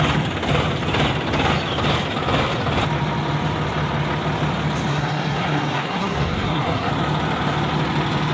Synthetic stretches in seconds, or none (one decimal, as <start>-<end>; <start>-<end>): 4.9-6.9

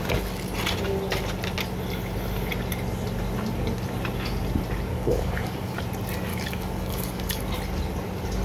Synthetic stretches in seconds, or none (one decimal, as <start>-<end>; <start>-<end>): 4.9-5.8; 6.3-7.4

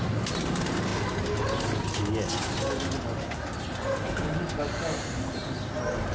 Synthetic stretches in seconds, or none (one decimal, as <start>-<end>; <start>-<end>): 0.0-0.9; 4.6-5.4

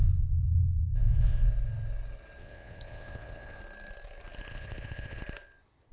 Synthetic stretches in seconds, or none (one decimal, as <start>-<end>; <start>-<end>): 0.0-1.5; 2.4-3.6; 4.5-5.2